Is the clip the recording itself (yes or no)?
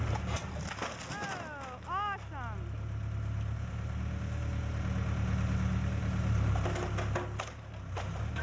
yes